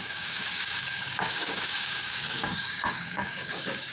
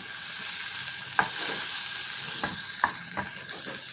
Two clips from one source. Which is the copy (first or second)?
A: first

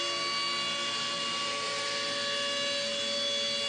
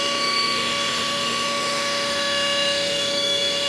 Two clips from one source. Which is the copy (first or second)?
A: second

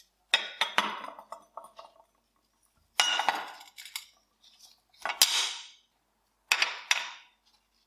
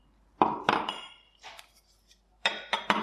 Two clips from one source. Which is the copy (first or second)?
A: second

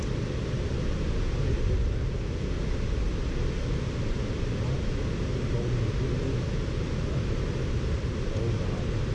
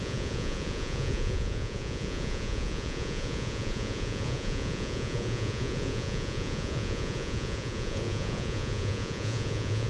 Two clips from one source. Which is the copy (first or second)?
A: second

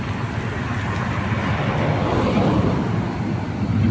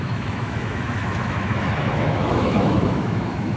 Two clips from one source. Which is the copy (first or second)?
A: second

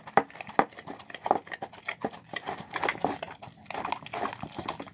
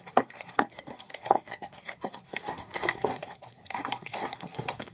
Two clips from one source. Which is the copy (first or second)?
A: second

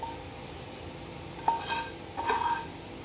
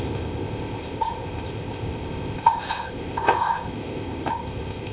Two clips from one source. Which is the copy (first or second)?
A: second